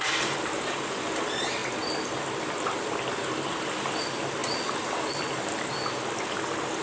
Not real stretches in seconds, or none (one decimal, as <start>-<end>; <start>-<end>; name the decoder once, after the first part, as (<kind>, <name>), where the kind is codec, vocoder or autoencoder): 0.0-1.6 (vocoder, BigVGAN v2); 3.6-6.8